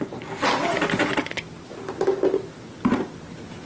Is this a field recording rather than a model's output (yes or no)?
yes